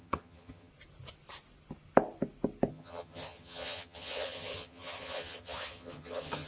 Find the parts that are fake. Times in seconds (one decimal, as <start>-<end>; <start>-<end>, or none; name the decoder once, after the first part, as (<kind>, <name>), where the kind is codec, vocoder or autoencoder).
0.0-0.7 (vocoder, HiFi-GAN); 2.7-6.5

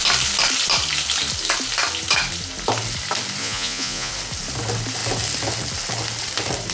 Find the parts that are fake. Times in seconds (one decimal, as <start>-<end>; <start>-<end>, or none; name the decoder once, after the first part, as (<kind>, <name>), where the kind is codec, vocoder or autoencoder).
3.4-4.1 (vocoder, Vocos)

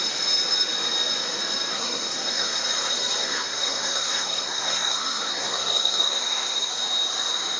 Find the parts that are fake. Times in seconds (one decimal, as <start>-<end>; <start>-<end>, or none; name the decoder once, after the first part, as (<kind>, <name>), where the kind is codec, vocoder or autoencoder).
1.7-2.6 (codec, SNAC); 3.2-6.7

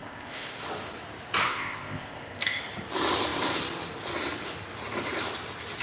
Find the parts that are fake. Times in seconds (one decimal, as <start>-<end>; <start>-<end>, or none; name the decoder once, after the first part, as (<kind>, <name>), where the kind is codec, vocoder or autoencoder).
0.0-0.6 (codec, ZipCodec); 1.4-2.6

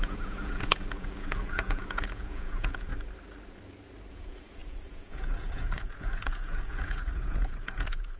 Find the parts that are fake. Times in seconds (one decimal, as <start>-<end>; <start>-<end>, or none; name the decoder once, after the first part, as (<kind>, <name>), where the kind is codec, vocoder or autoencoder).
0.0-2.9 (vocoder, Vocos); 4.1-8.2

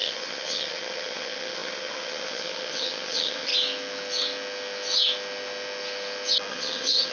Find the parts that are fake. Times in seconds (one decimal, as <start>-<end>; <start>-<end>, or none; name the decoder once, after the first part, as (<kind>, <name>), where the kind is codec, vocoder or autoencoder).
0.0-3.5 (vocoder, HiFi-GAN); 6.5-7.1

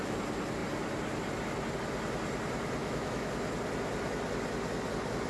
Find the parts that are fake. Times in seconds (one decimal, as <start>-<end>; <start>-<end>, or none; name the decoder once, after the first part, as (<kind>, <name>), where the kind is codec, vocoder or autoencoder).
2.8-3.3 (autoencoder, DAC-VAE)